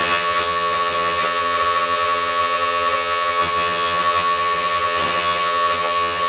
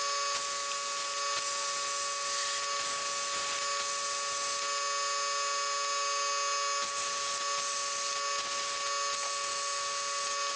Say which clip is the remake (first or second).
first